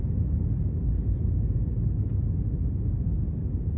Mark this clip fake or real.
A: real